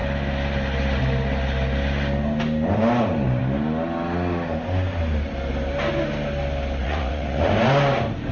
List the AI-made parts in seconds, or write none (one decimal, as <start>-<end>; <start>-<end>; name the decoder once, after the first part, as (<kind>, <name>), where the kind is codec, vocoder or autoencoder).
6.8-7.5 (vocoder, Vocos)